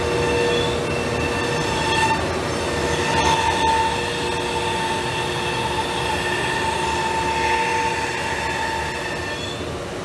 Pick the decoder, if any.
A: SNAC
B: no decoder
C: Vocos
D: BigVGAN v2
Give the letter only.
B